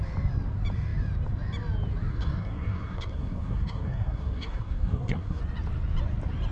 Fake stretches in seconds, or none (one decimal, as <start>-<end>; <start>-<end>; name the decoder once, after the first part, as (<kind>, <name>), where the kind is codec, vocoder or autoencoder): 2.1-5.4 (codec, SNAC)